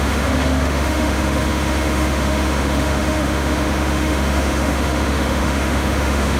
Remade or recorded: remade